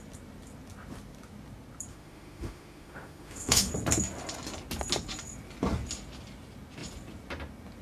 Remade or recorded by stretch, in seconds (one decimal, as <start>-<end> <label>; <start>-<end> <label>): 0.0-1.9 recorded; 1.9-3.7 remade; 3.7-7.8 recorded